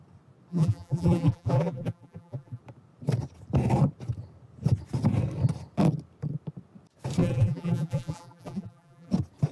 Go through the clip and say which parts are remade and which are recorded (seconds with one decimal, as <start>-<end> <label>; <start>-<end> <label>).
0.0-0.5 recorded; 0.5-2.6 remade; 2.6-7.2 recorded; 7.2-9.1 remade; 9.1-9.5 recorded